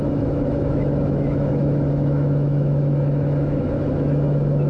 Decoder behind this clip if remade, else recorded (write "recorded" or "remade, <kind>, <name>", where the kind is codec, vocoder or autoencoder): remade, autoencoder, DAC-VAE